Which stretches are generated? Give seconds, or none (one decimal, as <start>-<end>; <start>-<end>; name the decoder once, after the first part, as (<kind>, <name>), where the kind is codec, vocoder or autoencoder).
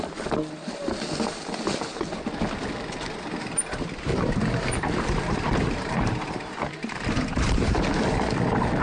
4.1-7.9 (vocoder, BigVGAN v2)